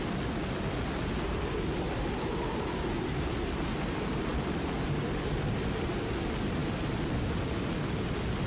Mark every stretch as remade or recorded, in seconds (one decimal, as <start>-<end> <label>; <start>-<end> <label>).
0.0-8.5 recorded